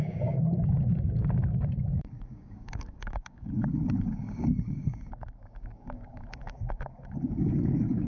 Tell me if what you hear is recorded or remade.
remade